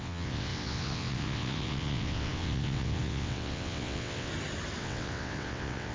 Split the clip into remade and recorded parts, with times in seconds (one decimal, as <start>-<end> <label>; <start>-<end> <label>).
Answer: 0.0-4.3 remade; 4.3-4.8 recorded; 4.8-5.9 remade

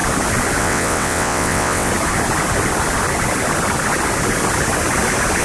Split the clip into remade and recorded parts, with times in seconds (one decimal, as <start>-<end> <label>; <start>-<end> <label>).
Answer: 0.0-0.6 recorded; 0.6-1.9 remade; 1.9-5.4 recorded

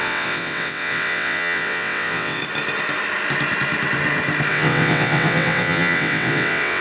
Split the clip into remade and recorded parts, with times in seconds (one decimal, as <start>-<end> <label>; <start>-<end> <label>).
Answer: 0.0-2.4 remade; 2.4-4.5 recorded; 4.5-6.8 remade